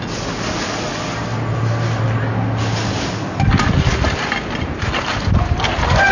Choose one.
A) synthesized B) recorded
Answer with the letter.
B